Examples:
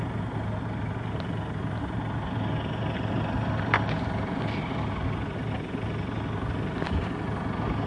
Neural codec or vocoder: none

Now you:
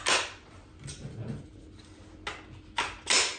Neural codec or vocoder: none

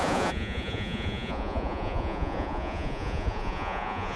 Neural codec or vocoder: vocoder, Vocos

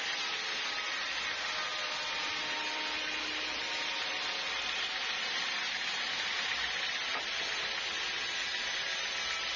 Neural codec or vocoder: none